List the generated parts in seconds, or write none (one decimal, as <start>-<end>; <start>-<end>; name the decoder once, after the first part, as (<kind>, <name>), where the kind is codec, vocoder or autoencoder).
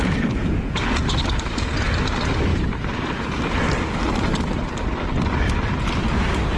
2.5-3.7 (vocoder, BigVGAN v2)